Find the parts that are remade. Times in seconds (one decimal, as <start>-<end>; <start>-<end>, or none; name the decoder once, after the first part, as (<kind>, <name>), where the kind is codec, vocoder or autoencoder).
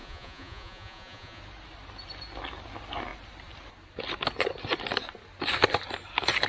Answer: 0.0-1.4 (vocoder, Vocos)